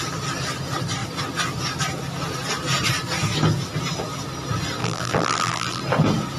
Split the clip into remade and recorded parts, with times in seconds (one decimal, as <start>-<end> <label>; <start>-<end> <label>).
0.0-4.8 recorded; 4.8-5.8 remade; 5.8-6.4 recorded